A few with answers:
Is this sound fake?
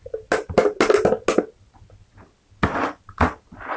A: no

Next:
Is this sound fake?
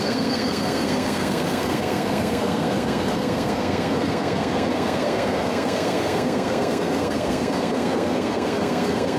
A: yes